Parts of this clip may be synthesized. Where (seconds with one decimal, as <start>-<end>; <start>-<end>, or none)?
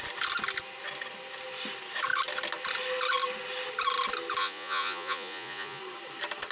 4.4-5.8